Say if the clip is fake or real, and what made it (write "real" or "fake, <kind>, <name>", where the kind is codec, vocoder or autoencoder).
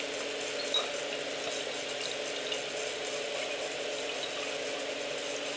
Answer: real